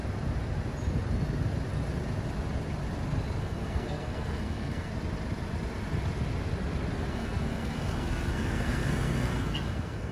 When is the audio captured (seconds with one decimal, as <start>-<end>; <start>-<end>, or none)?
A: 0.0-3.4; 4.9-7.1